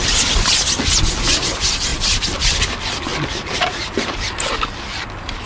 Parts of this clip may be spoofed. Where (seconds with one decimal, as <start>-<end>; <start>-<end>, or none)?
1.9-2.6